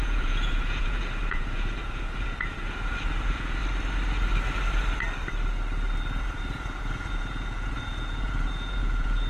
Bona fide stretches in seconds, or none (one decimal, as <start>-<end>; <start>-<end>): 3.6-6.2